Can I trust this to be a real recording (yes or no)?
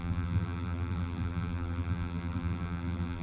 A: no